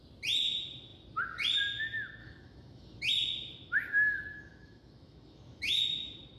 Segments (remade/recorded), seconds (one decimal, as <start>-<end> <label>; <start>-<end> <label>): 0.0-2.2 recorded; 2.2-3.1 remade; 3.1-4.3 recorded; 4.3-5.8 remade; 5.8-6.4 recorded